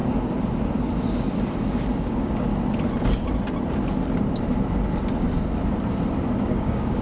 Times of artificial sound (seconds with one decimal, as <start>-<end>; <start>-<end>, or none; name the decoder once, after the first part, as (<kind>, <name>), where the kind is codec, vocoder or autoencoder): 2.0-2.5 (codec, DAC); 6.4-7.0